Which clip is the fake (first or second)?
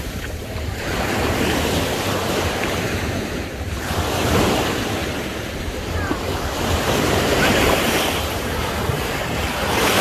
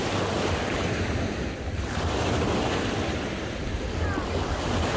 first